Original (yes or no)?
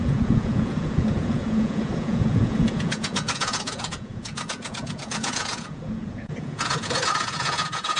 no